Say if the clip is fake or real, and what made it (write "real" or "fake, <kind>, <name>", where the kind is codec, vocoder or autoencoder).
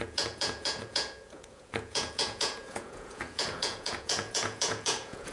fake, vocoder, Vocos